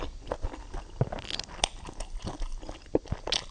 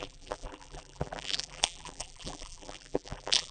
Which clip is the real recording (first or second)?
first